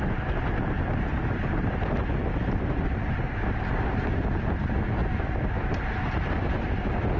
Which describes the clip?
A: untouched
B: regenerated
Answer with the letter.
A